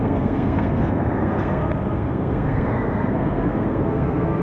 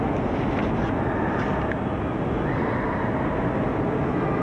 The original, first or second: second